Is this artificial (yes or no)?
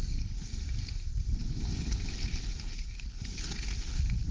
no